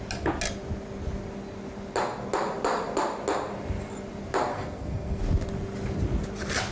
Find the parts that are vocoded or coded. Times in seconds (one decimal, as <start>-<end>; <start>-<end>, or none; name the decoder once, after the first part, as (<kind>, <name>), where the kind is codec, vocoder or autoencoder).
4.5-5.2 (codec, SNAC)